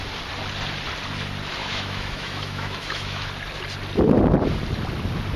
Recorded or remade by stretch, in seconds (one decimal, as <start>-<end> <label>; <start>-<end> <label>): 0.0-1.6 recorded; 1.6-3.3 remade; 3.3-5.4 recorded